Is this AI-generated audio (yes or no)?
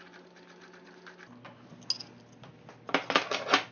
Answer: no